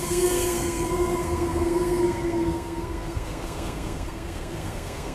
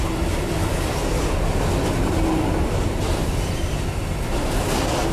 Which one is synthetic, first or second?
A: first